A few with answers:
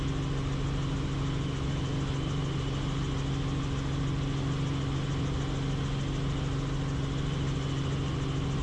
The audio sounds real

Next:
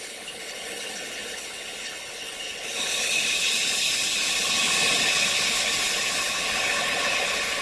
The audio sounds fake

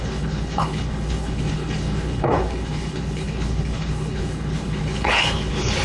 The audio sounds fake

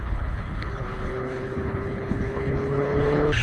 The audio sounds fake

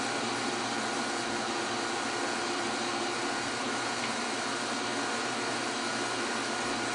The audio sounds real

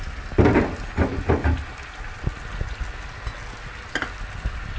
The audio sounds real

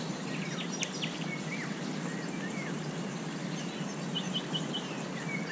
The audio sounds real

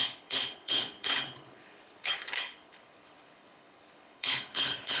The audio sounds fake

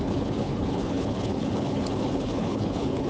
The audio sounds fake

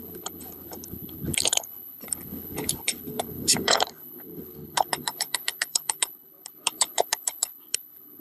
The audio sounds fake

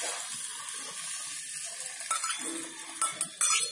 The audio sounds real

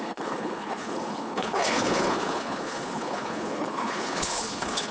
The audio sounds fake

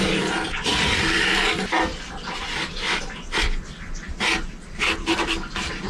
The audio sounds real